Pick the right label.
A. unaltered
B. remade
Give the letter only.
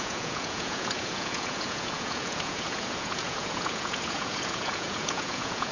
B